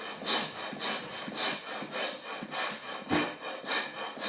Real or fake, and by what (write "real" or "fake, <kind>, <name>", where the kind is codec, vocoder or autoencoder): real